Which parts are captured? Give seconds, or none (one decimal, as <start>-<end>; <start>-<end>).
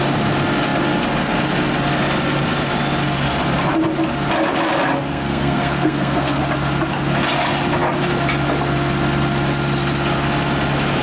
0.0-5.1; 6.4-11.0